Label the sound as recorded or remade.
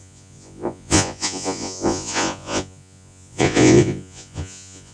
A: remade